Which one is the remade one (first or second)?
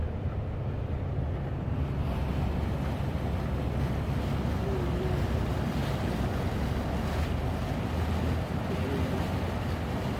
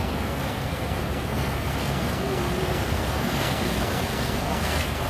second